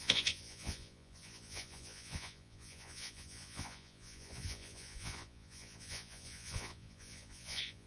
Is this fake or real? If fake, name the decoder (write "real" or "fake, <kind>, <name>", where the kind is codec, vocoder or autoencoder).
fake, vocoder, Vocos